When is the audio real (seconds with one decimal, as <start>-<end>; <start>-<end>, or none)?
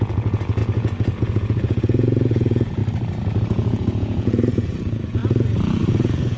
2.8-3.4